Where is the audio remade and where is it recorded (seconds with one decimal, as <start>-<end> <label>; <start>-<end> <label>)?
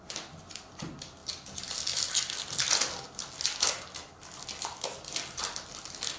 0.0-6.2 recorded